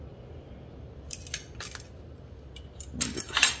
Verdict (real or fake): real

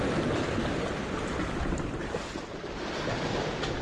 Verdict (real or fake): real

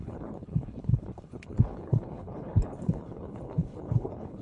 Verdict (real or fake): fake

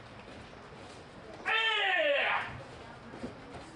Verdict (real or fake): real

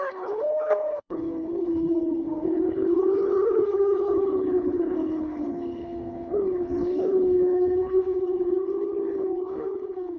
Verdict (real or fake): fake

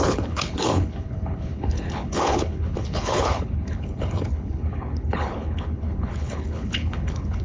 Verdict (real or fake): fake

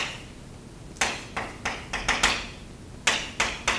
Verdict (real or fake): real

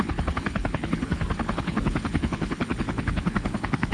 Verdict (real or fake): fake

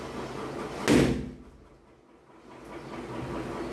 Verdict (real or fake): real